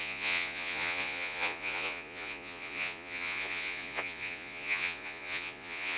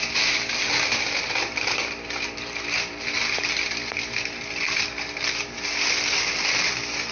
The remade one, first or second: first